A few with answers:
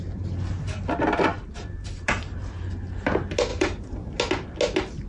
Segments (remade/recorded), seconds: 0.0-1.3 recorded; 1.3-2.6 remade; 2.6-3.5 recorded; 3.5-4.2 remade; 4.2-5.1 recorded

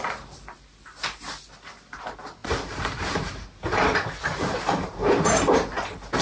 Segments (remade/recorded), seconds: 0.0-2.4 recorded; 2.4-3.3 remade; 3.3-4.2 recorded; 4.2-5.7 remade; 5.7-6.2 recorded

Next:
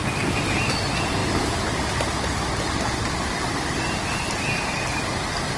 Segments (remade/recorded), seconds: 0.0-5.6 recorded